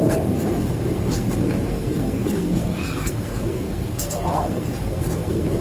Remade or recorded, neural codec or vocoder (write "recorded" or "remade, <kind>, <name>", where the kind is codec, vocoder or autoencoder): remade, codec, SNAC